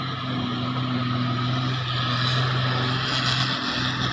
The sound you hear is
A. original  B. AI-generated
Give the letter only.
A